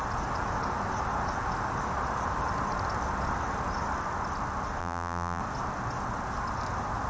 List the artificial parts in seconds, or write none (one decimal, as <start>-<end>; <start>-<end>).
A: 4.8-5.4